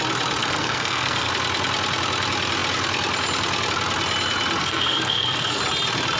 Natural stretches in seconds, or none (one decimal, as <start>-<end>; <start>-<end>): 0.0-0.4; 1.3-4.6; 5.6-6.2